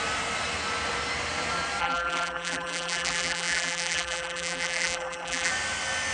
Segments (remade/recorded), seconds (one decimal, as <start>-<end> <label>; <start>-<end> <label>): 0.0-1.8 recorded; 1.8-5.5 remade; 5.5-6.1 recorded